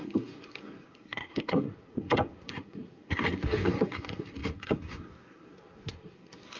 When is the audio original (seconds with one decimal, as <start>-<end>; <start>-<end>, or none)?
none